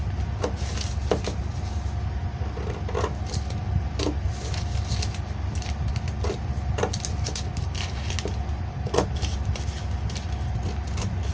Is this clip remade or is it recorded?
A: recorded